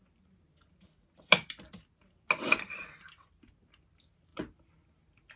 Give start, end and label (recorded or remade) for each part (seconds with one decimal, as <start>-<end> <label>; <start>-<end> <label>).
0.0-5.4 recorded